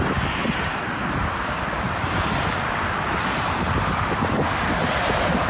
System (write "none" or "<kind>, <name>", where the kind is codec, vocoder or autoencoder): none